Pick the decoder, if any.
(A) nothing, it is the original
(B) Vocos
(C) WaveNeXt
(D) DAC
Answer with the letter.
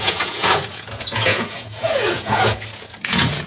B